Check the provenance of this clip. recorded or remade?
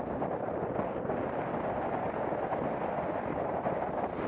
recorded